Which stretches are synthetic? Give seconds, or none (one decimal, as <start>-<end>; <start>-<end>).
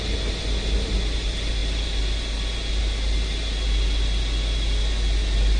none